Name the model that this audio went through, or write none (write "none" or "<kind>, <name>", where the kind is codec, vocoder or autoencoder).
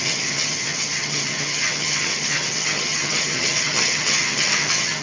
vocoder, HiFi-GAN